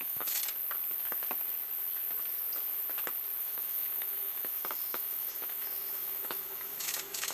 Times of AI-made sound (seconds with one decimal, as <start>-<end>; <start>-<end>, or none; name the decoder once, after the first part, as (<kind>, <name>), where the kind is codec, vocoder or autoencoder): 0.0-0.4 (autoencoder, DAC-VAE); 3.4-7.3